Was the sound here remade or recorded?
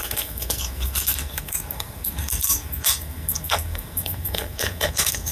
remade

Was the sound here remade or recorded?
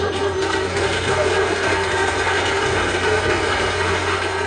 remade